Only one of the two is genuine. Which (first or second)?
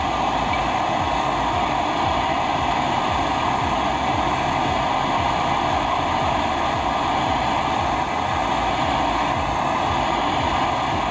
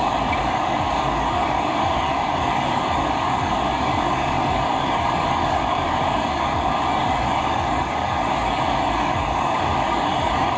first